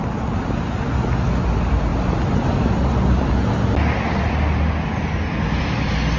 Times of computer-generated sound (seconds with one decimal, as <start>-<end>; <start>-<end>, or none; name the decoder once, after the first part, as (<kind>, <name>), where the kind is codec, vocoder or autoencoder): none